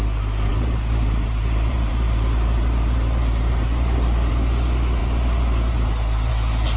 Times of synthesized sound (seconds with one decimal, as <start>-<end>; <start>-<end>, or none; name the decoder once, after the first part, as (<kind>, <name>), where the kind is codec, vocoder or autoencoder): 0.5-4.3 (vocoder, BigVGAN v2); 5.0-6.3